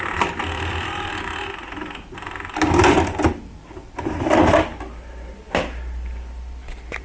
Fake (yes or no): no